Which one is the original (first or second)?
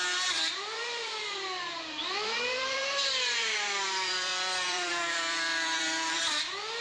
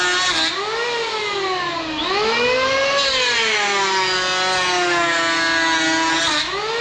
second